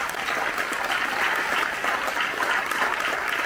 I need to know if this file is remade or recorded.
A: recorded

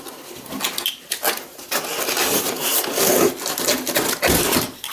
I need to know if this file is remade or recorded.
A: recorded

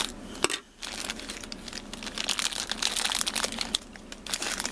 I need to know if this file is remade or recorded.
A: recorded